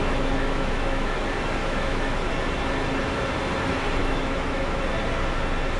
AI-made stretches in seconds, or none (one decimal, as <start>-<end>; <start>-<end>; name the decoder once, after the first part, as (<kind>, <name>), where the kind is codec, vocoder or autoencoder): 0.0-1.2 (autoencoder, DAC-VAE); 1.6-2.3; 4.0-4.8

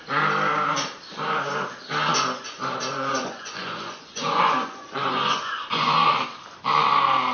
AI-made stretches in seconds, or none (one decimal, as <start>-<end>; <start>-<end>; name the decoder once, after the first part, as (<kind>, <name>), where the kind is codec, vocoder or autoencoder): 2.9-6.1 (vocoder, Vocos)